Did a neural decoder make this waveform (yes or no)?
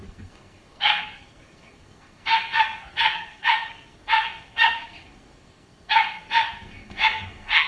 yes